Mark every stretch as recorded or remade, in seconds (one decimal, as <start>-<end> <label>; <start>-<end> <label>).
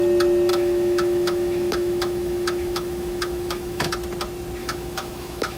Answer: 0.0-0.5 recorded; 0.5-3.9 remade; 3.9-4.6 recorded; 4.6-5.6 remade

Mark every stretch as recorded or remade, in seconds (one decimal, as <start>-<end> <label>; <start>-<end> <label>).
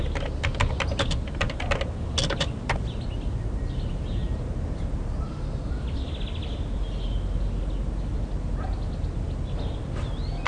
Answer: 0.0-10.5 recorded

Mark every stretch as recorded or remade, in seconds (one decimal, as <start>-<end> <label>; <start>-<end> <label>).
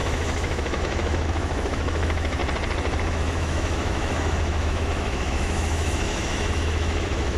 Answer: 0.0-2.4 remade; 2.4-3.1 recorded; 3.1-7.4 remade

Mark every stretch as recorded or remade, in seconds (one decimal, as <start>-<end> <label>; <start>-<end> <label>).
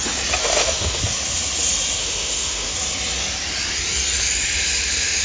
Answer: 0.0-0.4 recorded; 0.4-1.0 remade; 1.0-2.0 recorded; 2.0-2.7 remade; 2.7-5.2 recorded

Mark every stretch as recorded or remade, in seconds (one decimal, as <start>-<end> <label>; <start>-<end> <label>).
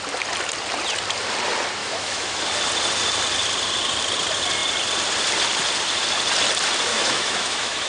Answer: 0.0-1.8 recorded; 1.8-2.4 remade; 2.4-6.9 recorded; 6.9-7.9 remade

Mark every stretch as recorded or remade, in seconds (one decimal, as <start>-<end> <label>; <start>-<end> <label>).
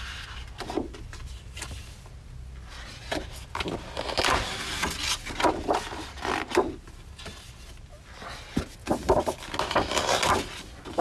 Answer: 0.0-11.0 recorded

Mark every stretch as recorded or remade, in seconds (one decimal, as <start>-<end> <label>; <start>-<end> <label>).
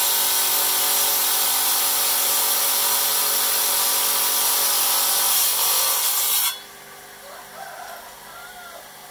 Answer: 0.0-9.1 recorded